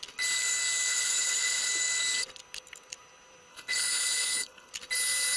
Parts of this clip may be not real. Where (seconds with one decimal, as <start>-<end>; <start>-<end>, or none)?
0.9-1.7; 3.5-4.7